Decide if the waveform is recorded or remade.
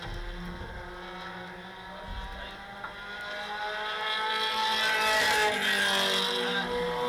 recorded